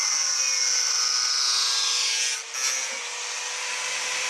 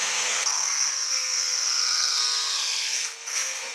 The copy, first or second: second